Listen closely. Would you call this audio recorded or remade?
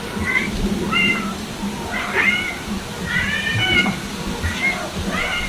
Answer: recorded